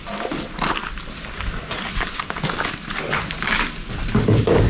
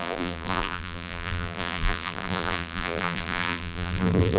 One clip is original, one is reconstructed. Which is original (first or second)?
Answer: first